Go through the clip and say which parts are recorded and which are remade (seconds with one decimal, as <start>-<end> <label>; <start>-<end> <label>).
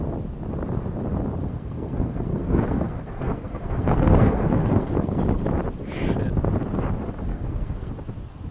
0.0-1.4 recorded; 1.4-5.2 remade; 5.2-7.3 recorded; 7.3-7.9 remade; 7.9-8.5 recorded